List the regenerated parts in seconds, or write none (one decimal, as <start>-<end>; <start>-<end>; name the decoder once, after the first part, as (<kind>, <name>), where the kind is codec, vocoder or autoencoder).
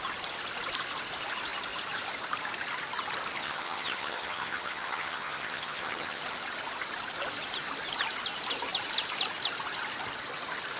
3.4-6.2 (vocoder, HiFi-GAN)